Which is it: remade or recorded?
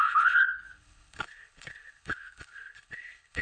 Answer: remade